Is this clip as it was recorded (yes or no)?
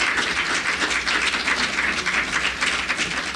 yes